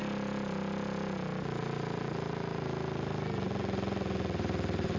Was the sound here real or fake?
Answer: real